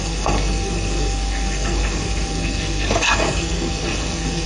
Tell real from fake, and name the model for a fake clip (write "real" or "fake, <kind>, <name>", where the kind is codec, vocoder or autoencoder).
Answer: fake, codec, SNAC